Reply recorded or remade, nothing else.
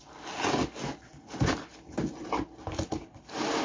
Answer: recorded